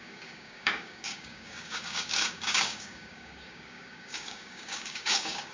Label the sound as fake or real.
fake